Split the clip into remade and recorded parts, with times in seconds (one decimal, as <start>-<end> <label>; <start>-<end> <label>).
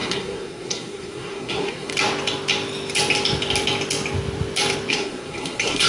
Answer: 0.0-1.9 remade; 1.9-4.9 recorded; 4.9-5.9 remade